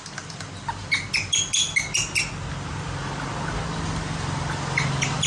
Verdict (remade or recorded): recorded